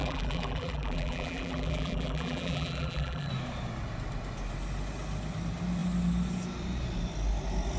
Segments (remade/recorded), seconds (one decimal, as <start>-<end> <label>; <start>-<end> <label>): 0.0-3.3 remade; 3.3-7.8 recorded